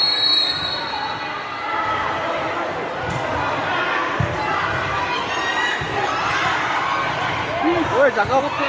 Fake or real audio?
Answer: real